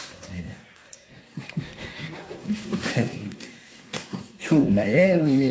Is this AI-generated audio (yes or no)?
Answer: yes